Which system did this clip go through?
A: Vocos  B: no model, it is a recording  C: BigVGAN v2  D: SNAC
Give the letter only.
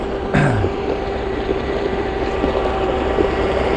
C